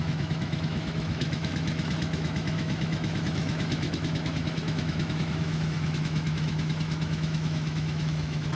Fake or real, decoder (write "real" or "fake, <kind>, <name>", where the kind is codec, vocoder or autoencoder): fake, autoencoder, DAC-VAE